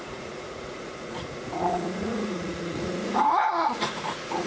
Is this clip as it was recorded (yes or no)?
no